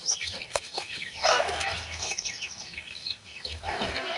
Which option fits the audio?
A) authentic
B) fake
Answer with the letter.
B